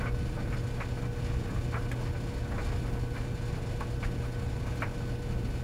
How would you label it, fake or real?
real